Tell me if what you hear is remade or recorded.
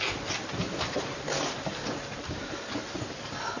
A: recorded